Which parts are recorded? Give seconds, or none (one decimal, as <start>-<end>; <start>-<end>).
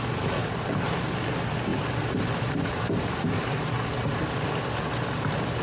0.0-0.4; 1.1-1.7; 3.8-5.6